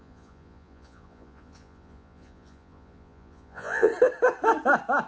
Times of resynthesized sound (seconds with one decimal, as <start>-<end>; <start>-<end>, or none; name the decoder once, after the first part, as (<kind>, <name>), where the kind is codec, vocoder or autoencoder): 0.0-3.9 (vocoder, Vocos)